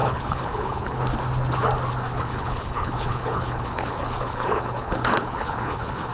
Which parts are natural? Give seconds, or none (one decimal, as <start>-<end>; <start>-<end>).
1.0-2.1